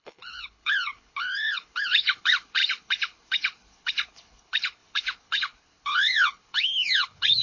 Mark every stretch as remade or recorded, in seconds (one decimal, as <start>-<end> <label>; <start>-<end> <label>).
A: 0.0-7.4 remade